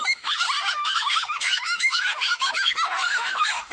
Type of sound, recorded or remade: remade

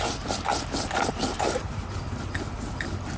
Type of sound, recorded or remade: remade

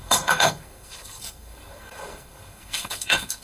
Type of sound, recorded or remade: remade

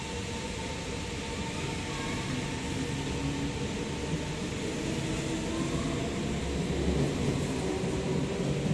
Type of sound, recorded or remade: recorded